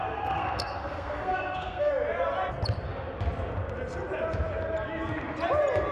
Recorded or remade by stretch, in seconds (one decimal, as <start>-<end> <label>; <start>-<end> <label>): 0.0-1.9 remade; 1.9-5.9 recorded